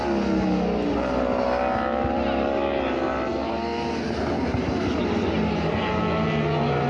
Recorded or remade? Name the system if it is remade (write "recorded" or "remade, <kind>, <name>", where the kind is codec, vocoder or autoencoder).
recorded